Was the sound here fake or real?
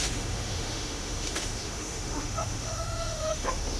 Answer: fake